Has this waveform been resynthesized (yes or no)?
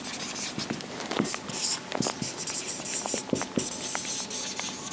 no